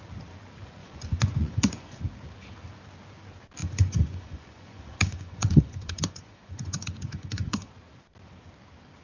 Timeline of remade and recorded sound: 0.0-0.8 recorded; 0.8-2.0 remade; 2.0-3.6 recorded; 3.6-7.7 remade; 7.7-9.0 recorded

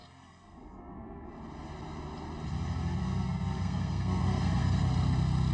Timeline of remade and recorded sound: 0.0-1.3 remade; 1.3-3.0 recorded; 3.0-4.8 remade; 4.8-5.5 recorded

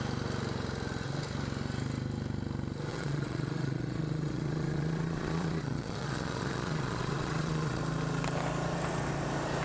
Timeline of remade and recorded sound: 0.0-2.9 recorded; 2.9-7.8 remade; 7.8-9.6 recorded

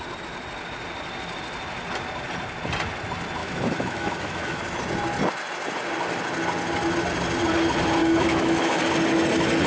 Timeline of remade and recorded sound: 0.0-3.4 recorded; 3.4-4.6 remade; 4.6-8.0 recorded; 8.0-8.8 remade; 8.8-9.7 recorded

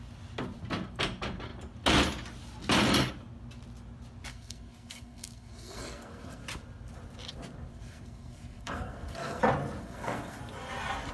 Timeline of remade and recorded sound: 0.0-4.3 recorded; 4.3-6.4 remade; 6.4-7.7 recorded; 7.7-9.4 remade; 9.4-9.8 recorded; 9.8-10.4 remade; 10.4-11.1 recorded